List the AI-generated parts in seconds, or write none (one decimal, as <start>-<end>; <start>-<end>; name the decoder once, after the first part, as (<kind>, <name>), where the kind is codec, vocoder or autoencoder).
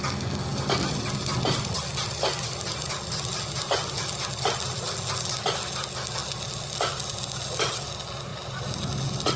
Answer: none